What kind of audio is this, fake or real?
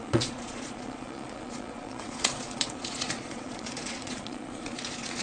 fake